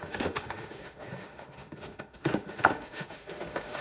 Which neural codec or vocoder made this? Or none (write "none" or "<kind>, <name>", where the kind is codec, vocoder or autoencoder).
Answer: autoencoder, DAC-VAE